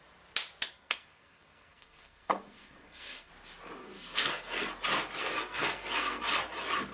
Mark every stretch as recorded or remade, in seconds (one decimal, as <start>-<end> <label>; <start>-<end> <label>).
0.0-0.7 recorded; 0.7-3.3 remade; 3.3-3.8 recorded; 3.8-4.7 remade; 4.7-5.2 recorded; 5.2-6.2 remade; 6.2-6.9 recorded